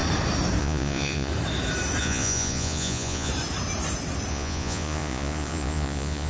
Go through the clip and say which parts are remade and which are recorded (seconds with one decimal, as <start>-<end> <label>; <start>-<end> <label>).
0.0-0.6 recorded; 0.6-1.3 remade; 1.3-2.0 recorded; 2.0-3.3 remade; 3.3-4.3 recorded; 4.3-6.3 remade

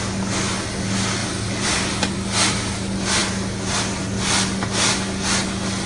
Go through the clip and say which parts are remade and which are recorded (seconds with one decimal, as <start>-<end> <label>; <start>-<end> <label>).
0.0-1.2 recorded; 1.2-1.8 remade; 1.8-5.9 recorded

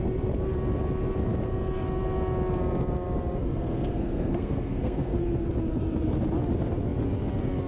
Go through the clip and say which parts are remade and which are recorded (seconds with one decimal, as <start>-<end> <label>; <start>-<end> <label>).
0.0-3.4 recorded; 3.4-5.2 remade; 5.2-7.7 recorded

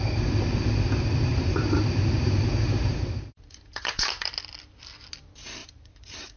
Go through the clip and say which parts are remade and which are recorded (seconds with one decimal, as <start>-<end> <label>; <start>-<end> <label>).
0.0-1.3 recorded; 1.3-4.3 remade; 4.3-5.6 recorded; 5.6-6.4 remade

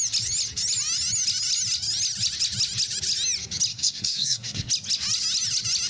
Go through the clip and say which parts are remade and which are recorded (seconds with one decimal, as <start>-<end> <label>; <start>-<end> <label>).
0.0-3.7 recorded; 3.7-4.7 remade; 4.7-5.9 recorded